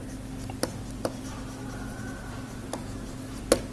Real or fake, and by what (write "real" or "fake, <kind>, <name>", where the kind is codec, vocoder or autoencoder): real